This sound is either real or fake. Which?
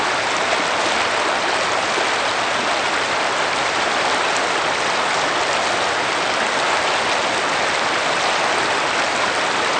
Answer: real